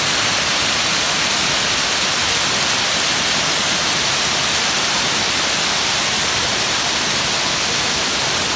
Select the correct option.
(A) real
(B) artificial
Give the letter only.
A